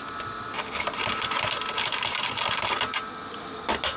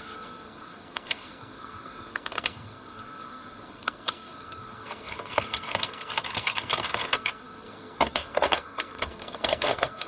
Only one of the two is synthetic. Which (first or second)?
second